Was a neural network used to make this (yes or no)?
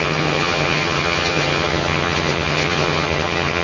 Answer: yes